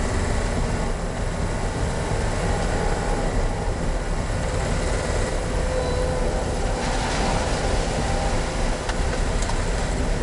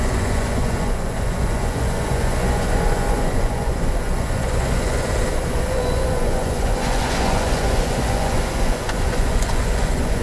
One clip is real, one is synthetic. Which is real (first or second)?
first